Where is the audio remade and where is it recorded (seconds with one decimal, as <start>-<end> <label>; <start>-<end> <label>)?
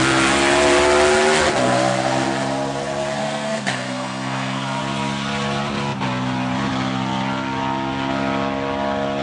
0.0-3.2 recorded; 3.2-4.8 remade; 4.8-9.2 recorded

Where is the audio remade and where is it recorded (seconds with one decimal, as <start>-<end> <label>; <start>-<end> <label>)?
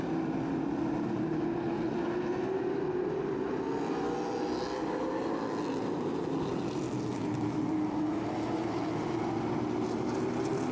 0.0-10.7 recorded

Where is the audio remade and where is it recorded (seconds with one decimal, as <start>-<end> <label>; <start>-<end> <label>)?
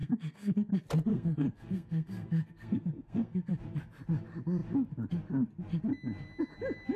0.0-0.7 remade; 0.7-1.1 recorded; 1.1-3.5 remade; 3.5-7.0 recorded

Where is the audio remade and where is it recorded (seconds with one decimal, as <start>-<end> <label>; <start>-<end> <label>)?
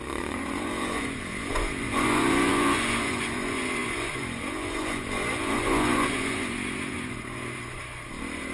0.0-8.5 remade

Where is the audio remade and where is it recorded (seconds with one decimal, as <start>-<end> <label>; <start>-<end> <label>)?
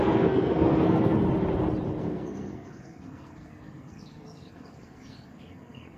0.0-1.2 remade; 1.2-2.0 recorded; 2.0-6.0 remade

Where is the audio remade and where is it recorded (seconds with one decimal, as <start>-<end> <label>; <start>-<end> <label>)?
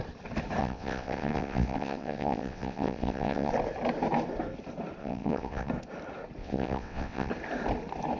0.0-0.6 recorded; 0.6-3.5 remade; 3.5-5.0 recorded; 5.0-5.7 remade; 5.7-6.4 recorded; 6.4-7.3 remade; 7.3-8.2 recorded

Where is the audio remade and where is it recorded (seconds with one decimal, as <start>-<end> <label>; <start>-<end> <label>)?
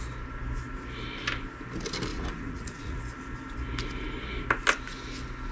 0.0-2.1 recorded; 2.1-3.0 remade; 3.0-5.5 recorded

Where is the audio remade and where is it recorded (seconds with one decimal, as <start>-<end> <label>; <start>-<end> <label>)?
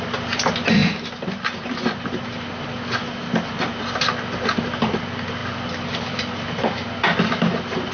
0.0-7.9 recorded